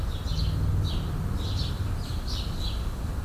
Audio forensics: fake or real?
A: real